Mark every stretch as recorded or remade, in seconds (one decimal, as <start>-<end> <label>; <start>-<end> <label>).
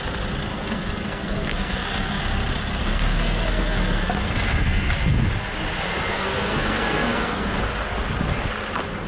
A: 0.0-0.5 recorded; 0.5-2.2 remade; 2.2-2.8 recorded; 2.8-5.3 remade; 5.3-6.1 recorded; 6.1-7.6 remade; 7.6-9.1 recorded